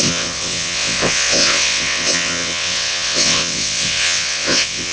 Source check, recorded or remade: remade